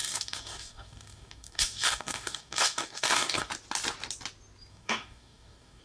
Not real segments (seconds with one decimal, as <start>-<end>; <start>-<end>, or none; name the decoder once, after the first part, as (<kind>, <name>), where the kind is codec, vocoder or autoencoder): 0.0-3.5 (codec, DAC); 4.7-5.8